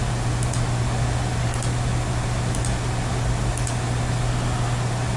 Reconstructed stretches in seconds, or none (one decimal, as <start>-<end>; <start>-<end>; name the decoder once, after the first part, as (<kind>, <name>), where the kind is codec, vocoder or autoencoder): none